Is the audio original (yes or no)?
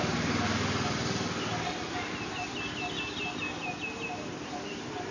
yes